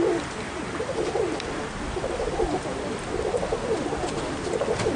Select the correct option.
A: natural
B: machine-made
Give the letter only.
A